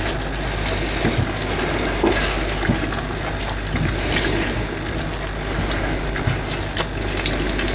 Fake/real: real